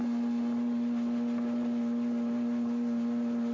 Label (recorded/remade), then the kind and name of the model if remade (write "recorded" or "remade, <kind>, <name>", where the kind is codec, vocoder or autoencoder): recorded